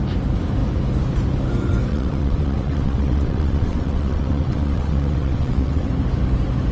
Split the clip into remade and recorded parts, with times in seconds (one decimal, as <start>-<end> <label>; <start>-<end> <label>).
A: 0.0-1.9 recorded; 1.9-5.9 remade; 5.9-6.7 recorded